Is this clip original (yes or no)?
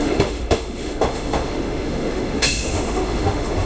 no